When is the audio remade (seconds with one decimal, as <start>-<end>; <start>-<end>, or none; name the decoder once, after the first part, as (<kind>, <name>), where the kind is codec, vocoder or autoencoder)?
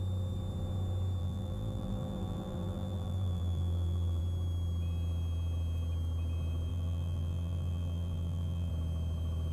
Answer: 1.2-4.2 (vocoder, BigVGAN v2); 6.7-8.7